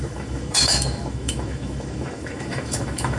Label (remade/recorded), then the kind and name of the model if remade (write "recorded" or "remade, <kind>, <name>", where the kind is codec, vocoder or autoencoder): remade, autoencoder, DAC-VAE